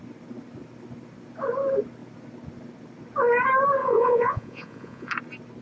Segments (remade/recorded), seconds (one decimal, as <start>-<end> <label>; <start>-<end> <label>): 0.0-3.8 recorded; 3.8-5.1 remade; 5.1-5.6 recorded